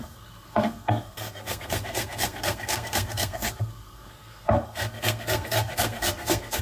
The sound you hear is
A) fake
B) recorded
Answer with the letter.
A